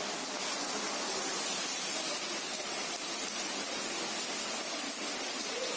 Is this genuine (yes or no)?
yes